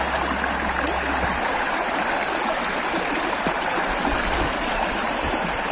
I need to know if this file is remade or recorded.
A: recorded